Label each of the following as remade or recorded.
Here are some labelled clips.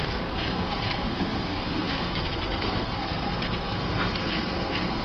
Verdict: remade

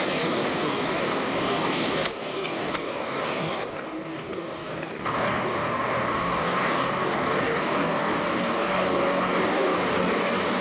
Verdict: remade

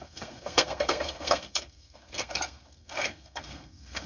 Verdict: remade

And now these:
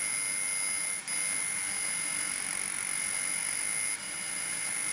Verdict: recorded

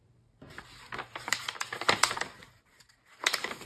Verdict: remade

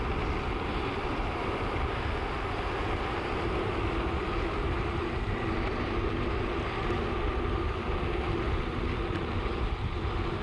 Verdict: recorded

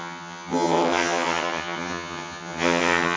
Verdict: remade